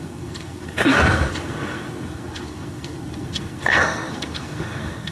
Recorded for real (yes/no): no